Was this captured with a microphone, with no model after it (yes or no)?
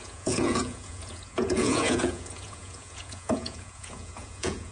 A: no